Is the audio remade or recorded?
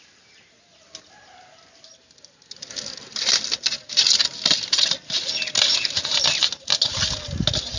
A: recorded